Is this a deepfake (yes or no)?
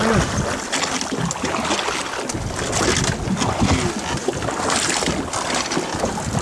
no